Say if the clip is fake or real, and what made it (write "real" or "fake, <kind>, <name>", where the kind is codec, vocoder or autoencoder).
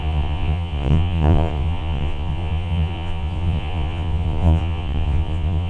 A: fake, vocoder, Vocos